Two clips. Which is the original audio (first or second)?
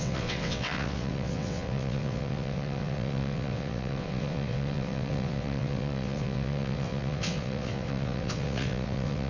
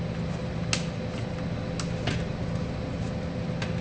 second